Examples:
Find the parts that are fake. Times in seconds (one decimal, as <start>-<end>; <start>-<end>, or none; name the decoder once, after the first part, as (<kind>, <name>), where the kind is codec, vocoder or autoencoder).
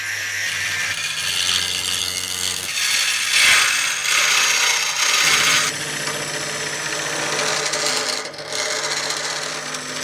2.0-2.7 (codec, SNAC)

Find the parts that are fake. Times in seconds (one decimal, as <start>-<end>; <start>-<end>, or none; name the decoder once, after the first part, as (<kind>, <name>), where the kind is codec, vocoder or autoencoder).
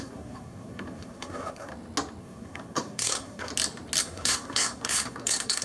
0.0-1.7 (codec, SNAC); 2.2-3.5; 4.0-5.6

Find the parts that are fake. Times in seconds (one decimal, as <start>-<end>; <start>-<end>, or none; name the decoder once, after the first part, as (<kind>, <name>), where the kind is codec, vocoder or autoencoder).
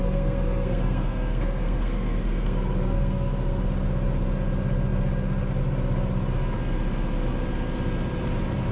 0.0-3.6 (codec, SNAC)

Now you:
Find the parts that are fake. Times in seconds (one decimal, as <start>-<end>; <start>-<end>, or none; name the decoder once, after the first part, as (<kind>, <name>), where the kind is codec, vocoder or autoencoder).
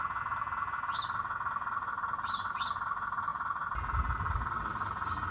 none